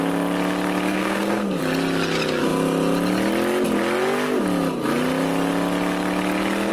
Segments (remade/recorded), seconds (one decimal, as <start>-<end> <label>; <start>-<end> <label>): 0.0-0.9 recorded; 0.9-1.6 remade; 1.6-6.7 recorded

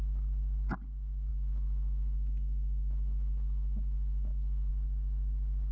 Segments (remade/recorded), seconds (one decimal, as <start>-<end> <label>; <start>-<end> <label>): 0.0-5.7 recorded

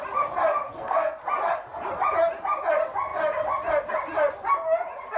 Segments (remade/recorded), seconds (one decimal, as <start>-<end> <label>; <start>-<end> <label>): 0.0-0.7 recorded; 0.7-1.2 remade; 1.2-5.2 recorded

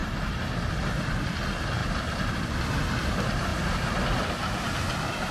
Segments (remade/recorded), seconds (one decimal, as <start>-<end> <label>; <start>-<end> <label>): 0.0-1.8 recorded; 1.8-2.5 remade; 2.5-3.5 recorded; 3.5-5.3 remade